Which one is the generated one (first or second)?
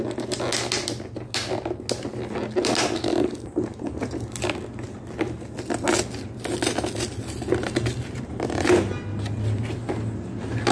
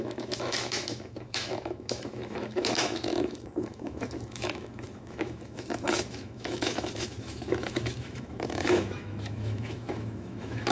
second